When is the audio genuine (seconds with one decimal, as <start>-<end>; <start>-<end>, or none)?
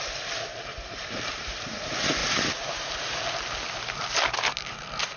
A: 0.0-0.5; 1.8-2.2; 3.2-5.2